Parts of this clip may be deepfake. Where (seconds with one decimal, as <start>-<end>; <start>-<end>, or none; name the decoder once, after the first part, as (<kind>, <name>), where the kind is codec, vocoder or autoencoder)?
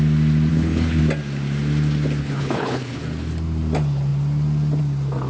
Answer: 0.5-1.0 (codec, HILCodec); 2.2-3.0